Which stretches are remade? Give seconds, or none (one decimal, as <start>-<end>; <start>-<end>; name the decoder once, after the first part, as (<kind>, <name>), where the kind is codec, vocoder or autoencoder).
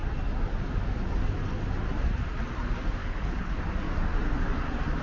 3.0-3.6 (codec, HILCodec)